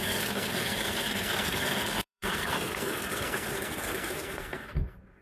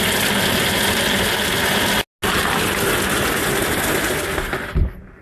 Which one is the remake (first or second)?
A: first